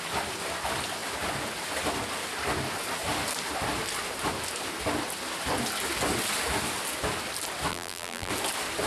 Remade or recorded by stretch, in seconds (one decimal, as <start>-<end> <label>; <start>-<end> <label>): 0.0-7.7 recorded; 7.7-8.3 remade; 8.3-8.9 recorded